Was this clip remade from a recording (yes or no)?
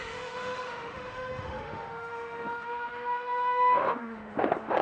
yes